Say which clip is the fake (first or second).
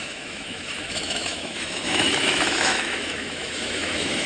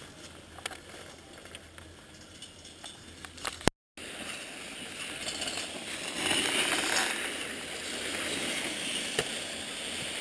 first